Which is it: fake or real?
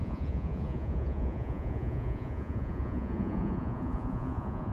fake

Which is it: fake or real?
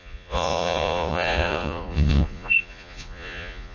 fake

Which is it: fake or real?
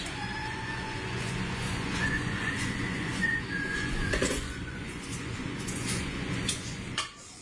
fake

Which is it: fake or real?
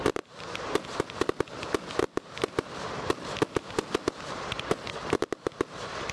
real